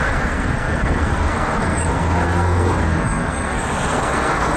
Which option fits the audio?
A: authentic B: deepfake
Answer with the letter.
B